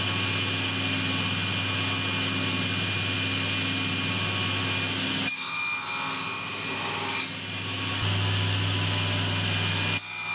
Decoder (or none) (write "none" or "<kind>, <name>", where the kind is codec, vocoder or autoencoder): none